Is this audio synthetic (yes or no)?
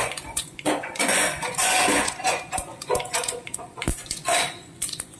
yes